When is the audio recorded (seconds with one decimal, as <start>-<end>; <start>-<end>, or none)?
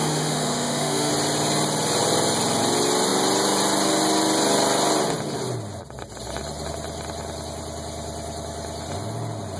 1.1-9.6